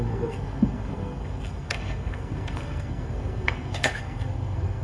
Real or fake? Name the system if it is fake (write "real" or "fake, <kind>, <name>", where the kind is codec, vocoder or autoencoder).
fake, codec, SNAC